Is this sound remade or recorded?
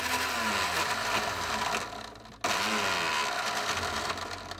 recorded